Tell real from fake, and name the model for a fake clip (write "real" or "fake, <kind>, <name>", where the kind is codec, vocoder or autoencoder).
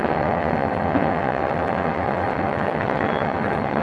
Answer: fake, vocoder, WaveNeXt